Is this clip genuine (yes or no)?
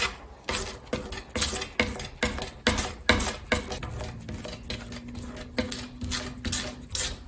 yes